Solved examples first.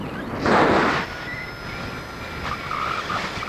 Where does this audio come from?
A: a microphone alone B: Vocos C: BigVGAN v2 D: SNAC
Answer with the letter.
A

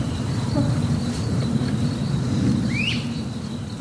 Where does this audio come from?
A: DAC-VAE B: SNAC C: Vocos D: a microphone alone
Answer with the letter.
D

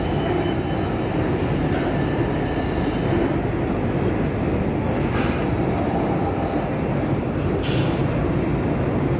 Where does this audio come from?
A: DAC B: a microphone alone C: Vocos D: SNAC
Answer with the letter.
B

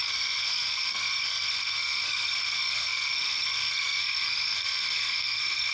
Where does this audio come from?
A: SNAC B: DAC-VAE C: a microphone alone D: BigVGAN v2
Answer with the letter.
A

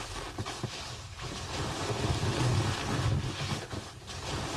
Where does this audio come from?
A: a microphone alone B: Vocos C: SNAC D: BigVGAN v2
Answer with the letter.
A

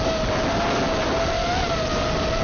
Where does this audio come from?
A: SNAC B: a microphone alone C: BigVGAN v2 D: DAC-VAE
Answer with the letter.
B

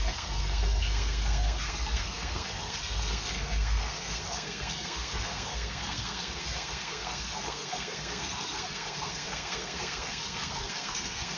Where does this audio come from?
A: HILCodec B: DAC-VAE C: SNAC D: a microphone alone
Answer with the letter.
C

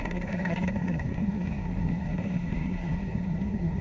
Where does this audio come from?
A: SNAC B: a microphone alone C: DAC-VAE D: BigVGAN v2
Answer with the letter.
A